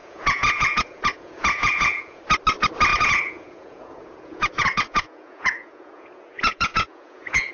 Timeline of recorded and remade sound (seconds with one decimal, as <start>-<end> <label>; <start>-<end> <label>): 0.0-2.2 remade; 2.2-2.9 recorded; 2.9-7.5 remade